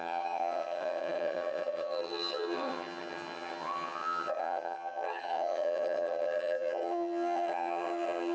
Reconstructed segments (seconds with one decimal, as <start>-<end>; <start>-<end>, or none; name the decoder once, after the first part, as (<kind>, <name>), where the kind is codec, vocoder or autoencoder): 0.0-8.3 (vocoder, HiFi-GAN)